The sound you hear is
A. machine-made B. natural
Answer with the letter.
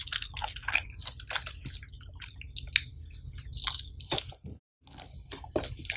B